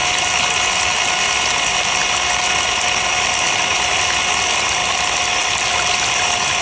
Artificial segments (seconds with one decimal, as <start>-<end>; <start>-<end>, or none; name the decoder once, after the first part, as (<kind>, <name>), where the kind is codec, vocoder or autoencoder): none